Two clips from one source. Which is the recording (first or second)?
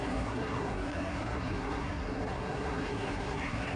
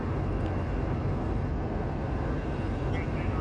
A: second